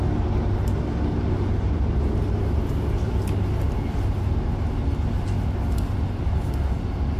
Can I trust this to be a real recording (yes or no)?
yes